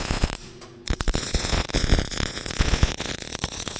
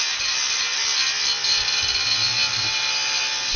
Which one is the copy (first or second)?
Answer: first